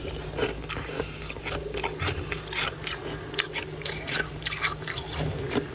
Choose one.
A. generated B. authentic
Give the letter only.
B